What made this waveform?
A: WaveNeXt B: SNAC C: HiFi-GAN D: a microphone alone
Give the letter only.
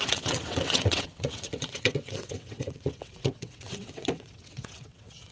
A